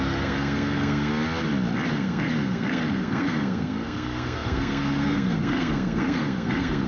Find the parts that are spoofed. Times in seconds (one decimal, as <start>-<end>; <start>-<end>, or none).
0.0-1.1; 1.9-6.9